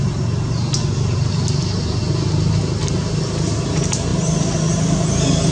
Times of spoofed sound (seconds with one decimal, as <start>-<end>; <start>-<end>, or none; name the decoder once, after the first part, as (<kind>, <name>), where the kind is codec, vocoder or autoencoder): none